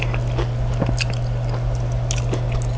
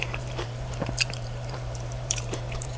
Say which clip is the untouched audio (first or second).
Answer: first